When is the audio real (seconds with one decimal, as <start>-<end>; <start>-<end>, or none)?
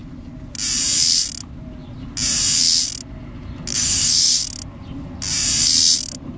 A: 0.0-3.7; 4.4-6.4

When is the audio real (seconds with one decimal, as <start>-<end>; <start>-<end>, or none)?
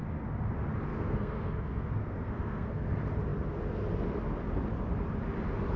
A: 0.0-0.9; 2.9-5.8